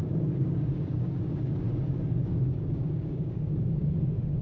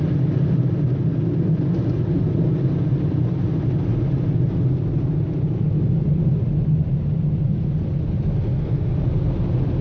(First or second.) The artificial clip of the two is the first